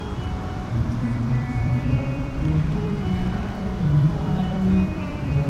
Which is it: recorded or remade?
remade